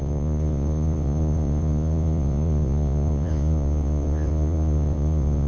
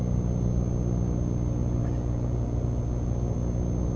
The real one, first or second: second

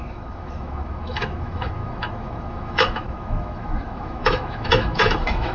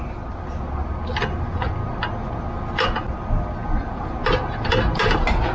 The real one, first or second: second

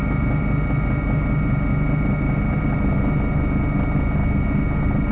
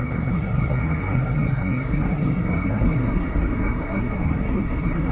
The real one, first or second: first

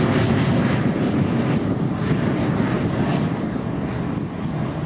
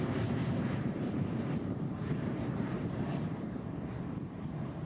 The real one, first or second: first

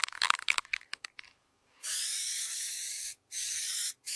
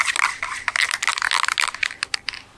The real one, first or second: second